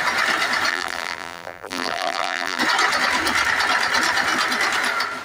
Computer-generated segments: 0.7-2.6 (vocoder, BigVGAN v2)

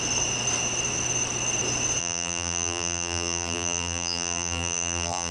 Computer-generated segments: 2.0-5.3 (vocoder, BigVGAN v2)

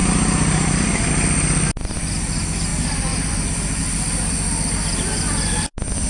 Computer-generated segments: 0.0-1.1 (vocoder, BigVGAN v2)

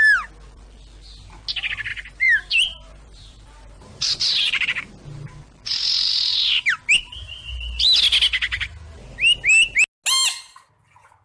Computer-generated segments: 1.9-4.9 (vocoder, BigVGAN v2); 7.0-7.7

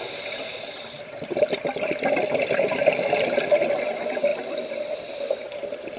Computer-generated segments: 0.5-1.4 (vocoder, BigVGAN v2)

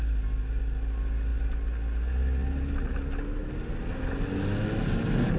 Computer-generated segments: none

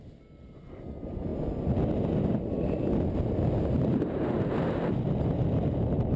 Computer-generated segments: none